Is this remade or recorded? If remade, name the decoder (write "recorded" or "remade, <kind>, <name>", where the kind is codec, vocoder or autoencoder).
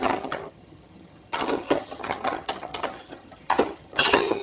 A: remade, vocoder, HiFi-GAN